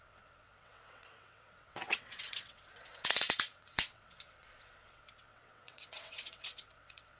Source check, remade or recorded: remade